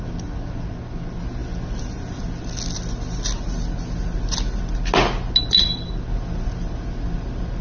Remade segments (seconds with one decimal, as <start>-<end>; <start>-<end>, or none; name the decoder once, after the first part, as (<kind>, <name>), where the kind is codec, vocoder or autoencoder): none